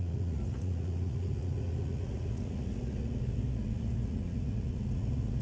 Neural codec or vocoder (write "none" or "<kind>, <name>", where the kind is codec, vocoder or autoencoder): vocoder, Vocos